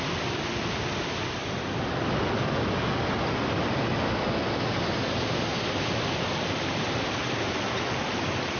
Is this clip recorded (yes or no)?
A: yes